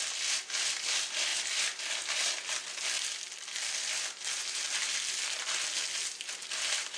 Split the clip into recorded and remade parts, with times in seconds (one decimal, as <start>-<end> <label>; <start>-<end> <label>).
0.0-7.0 recorded